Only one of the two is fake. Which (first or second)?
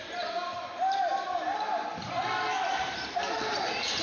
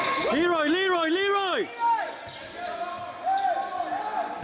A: first